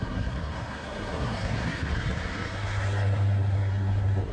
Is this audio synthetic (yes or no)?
yes